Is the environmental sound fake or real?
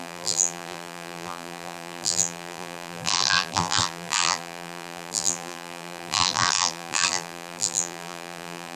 fake